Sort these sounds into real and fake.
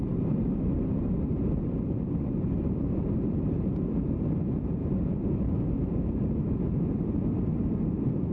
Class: fake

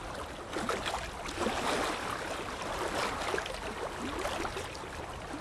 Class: real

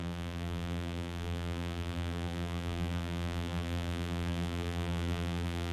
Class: fake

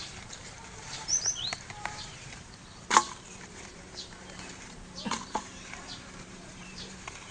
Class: fake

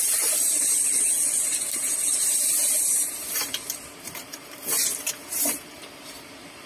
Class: fake